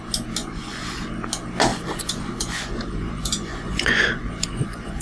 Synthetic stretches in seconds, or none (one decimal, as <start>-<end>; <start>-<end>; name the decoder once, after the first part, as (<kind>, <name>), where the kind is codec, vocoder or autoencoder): 0.4-1.1 (vocoder, Vocos); 1.7-5.0